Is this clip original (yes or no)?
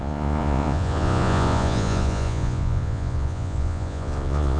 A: no